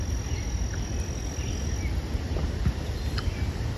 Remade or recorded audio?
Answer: recorded